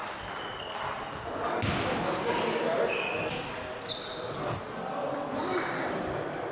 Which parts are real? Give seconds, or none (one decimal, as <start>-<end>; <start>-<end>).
0.0-6.5